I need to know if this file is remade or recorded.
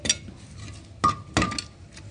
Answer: recorded